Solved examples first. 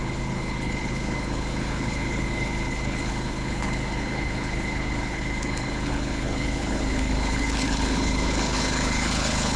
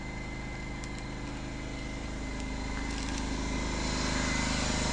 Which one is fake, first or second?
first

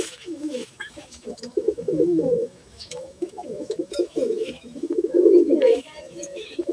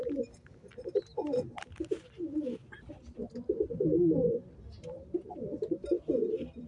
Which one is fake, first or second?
first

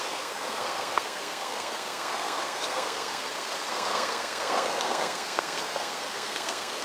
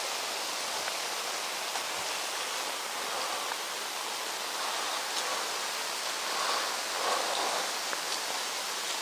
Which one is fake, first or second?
first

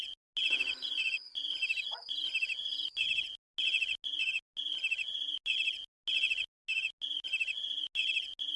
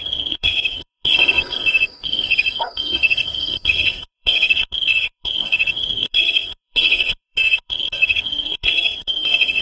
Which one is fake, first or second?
second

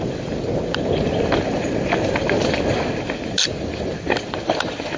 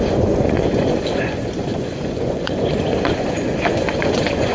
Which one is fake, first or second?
second